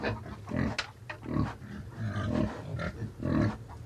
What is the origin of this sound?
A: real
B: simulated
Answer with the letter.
A